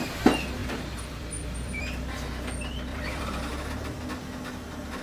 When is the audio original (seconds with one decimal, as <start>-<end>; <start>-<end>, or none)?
0.0-0.6; 1.8-2.9; 3.6-5.0